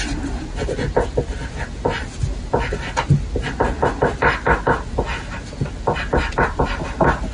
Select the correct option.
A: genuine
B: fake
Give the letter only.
A